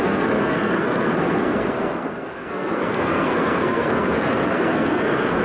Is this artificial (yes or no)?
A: yes